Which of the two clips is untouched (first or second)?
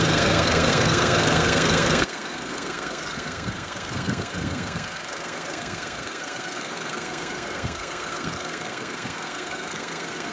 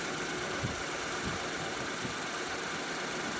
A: second